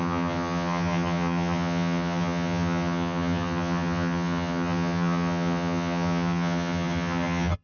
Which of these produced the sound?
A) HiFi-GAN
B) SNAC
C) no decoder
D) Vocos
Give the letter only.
A